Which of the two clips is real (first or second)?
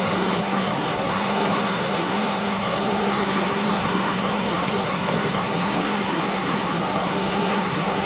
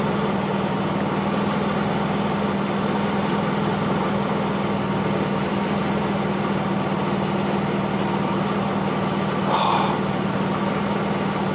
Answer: second